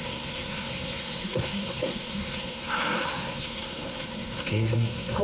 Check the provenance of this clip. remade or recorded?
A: remade